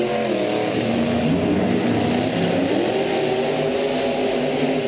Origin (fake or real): real